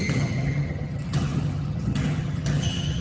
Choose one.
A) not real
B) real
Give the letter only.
A